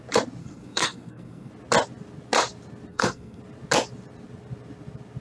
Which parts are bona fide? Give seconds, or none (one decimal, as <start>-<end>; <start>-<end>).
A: 0.0-0.4; 1.5-2.9; 3.4-5.2